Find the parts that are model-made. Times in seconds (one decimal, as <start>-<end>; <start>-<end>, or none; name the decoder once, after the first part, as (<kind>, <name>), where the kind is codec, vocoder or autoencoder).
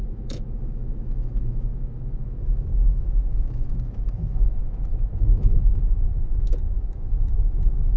0.0-8.0 (autoencoder, DAC-VAE)